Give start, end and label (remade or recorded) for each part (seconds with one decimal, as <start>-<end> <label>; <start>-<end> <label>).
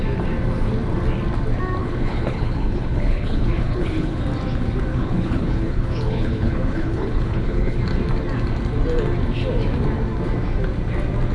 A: 0.0-1.8 recorded; 1.8-4.2 remade; 4.2-4.9 recorded; 4.9-7.8 remade; 7.8-11.3 recorded